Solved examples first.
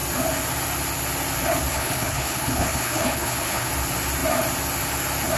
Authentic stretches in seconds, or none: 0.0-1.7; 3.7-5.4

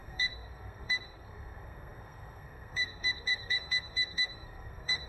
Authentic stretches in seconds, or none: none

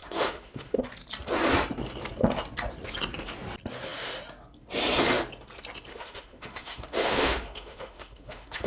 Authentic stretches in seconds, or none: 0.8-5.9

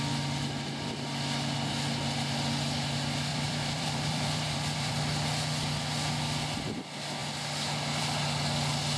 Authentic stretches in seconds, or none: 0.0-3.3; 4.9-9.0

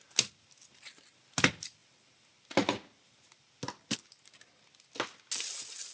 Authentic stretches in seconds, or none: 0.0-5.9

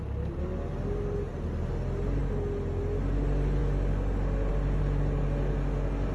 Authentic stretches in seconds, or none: 0.0-6.1